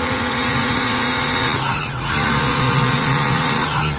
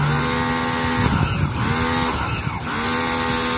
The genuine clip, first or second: second